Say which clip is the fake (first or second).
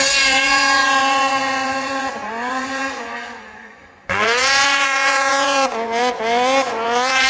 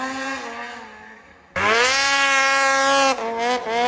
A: first